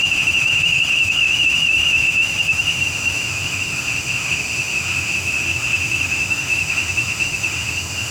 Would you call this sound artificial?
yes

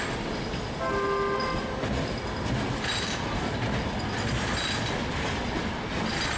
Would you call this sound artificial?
no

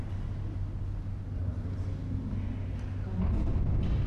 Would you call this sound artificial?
no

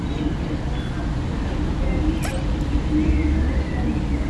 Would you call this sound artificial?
no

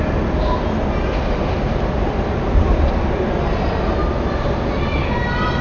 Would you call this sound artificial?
no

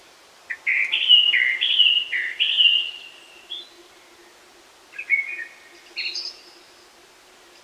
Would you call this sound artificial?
no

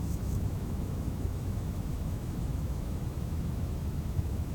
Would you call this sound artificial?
yes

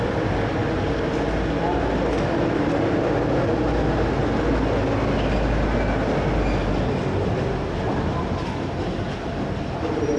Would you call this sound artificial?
no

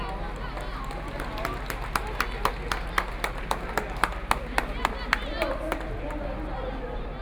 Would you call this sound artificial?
no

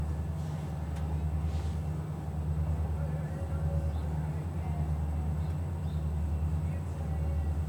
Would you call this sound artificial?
no